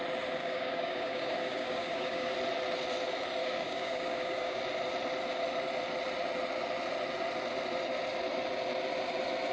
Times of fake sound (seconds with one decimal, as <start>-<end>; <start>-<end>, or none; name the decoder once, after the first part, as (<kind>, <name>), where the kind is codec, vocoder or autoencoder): 0.4-2.3 (codec, DAC); 3.4-4.6